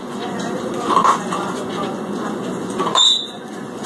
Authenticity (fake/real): fake